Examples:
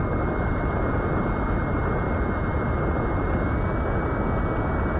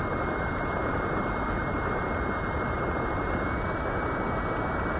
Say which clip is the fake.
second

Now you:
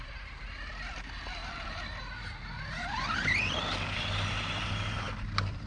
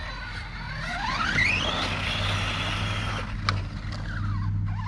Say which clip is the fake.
first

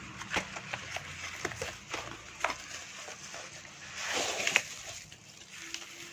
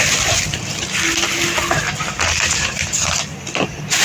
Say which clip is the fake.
second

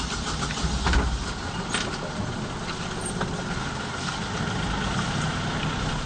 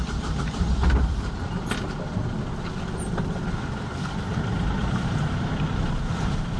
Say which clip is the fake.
second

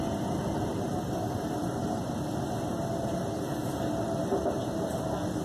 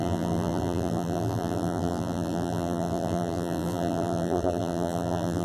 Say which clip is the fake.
second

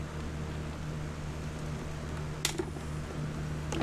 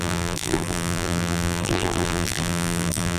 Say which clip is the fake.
second